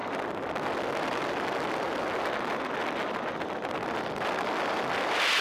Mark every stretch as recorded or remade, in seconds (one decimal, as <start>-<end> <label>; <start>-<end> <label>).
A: 0.0-5.4 recorded